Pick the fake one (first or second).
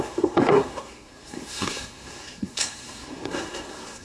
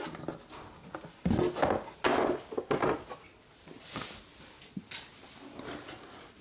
first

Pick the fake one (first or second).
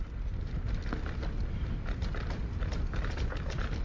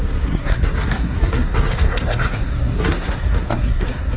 second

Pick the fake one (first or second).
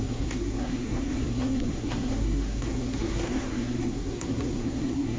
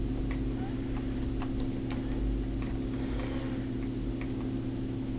first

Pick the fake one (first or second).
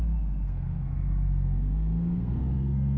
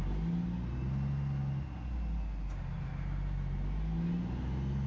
first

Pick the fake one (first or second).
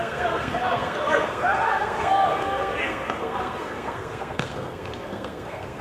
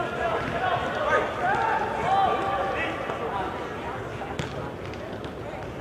first